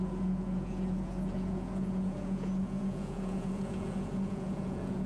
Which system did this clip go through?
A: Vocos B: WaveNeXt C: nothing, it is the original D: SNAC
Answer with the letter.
A